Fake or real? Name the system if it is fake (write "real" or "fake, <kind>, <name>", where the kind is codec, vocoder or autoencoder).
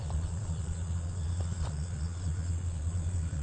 fake, vocoder, Vocos